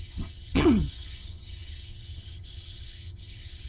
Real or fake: fake